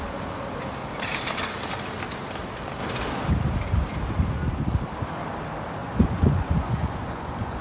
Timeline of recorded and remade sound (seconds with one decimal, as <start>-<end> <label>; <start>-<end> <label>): 0.0-5.8 recorded; 5.8-7.6 remade